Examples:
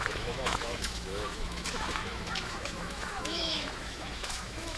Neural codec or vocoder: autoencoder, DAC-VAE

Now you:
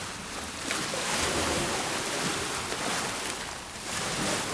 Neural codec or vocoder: none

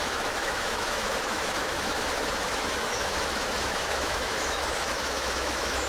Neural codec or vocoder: autoencoder, DAC-VAE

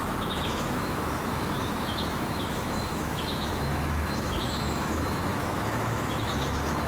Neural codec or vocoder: autoencoder, DAC-VAE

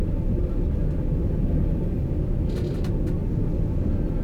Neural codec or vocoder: none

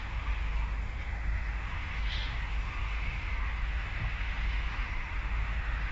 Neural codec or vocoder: autoencoder, DAC-VAE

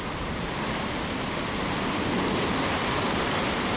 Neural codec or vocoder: none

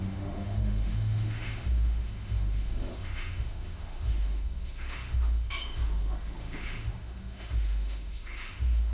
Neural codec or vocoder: autoencoder, DAC-VAE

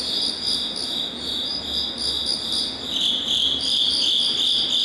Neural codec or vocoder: none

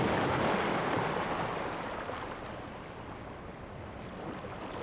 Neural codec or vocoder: none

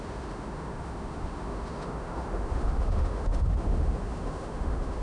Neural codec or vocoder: autoencoder, DAC-VAE